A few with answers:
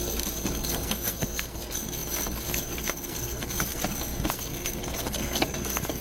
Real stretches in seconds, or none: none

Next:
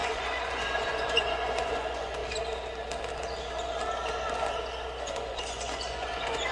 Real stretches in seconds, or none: 2.2-5.0

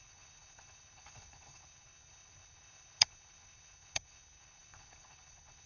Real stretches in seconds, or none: none

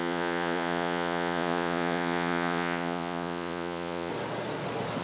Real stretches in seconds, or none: 4.1-5.0

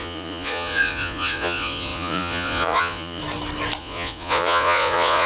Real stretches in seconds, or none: 3.2-3.8

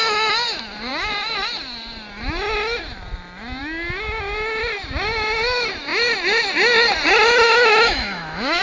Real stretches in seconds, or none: 0.0-7.7